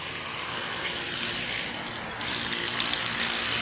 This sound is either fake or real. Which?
real